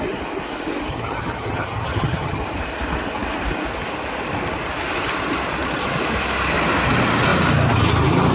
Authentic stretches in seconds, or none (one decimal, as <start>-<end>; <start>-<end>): 0.0-0.9; 2.4-8.3